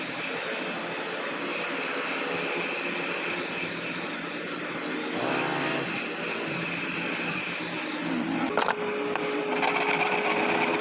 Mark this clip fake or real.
real